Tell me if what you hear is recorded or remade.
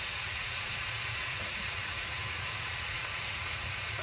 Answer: remade